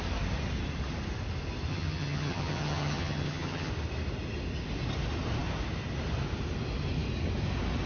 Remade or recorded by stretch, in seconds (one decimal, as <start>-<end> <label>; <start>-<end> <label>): 0.0-1.7 recorded; 1.7-3.7 remade; 3.7-7.9 recorded